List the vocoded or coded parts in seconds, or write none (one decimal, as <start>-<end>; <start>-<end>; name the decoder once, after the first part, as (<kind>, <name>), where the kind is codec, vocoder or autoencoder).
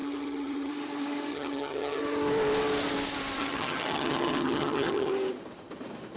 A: 0.0-0.7 (vocoder, HiFi-GAN); 1.3-2.0; 3.4-5.1